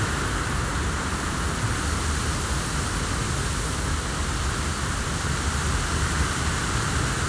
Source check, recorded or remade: recorded